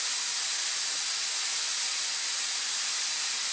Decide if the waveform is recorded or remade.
recorded